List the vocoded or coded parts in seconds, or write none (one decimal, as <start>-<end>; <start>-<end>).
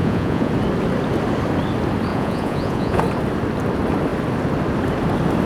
0.0-0.5; 2.1-3.0